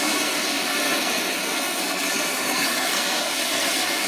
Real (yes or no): no